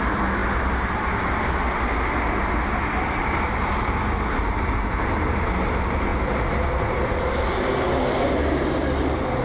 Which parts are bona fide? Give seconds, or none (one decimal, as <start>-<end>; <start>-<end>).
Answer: 0.0-9.4